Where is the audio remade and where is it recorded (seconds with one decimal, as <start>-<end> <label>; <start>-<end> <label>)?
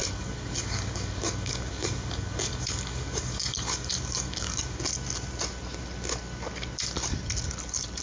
0.0-4.8 remade; 4.8-8.0 recorded